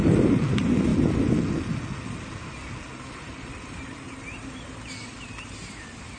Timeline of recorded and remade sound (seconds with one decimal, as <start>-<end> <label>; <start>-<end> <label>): 0.0-0.9 remade; 0.9-3.0 recorded; 3.0-6.2 remade